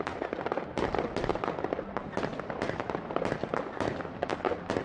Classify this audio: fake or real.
real